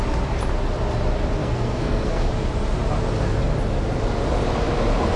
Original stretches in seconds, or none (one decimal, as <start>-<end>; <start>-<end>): 0.0-1.4; 2.3-5.2